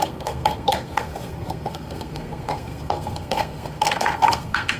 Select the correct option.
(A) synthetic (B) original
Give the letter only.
A